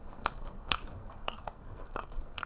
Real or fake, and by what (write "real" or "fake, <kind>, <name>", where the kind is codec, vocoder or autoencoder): fake, codec, SNAC